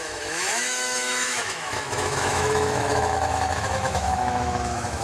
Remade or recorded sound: remade